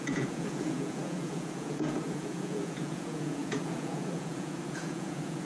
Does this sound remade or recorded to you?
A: remade